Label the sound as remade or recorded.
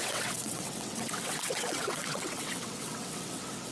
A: remade